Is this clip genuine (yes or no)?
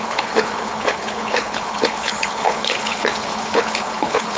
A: no